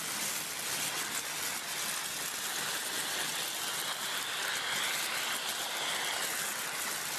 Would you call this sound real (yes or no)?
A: yes